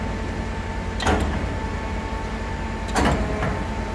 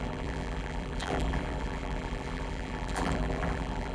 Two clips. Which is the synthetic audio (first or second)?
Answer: second